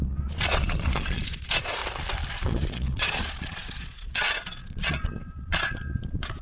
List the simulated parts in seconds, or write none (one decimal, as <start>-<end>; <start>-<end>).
0.0-1.8; 2.3-6.4